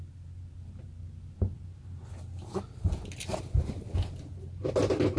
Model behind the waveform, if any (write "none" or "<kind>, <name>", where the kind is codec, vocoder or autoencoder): none